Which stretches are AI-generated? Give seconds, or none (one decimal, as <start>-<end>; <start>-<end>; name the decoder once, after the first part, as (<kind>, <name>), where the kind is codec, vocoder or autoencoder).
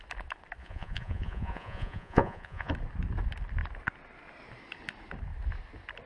0.6-2.7 (vocoder, Vocos)